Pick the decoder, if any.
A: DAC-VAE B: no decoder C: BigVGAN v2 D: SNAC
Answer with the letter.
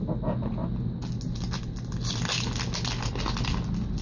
B